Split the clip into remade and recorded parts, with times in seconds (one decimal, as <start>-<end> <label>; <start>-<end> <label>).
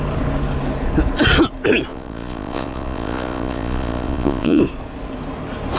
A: 0.0-1.9 recorded; 1.9-4.6 remade; 4.6-5.8 recorded